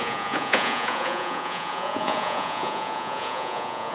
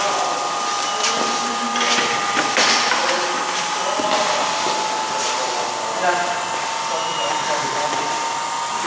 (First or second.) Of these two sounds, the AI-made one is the first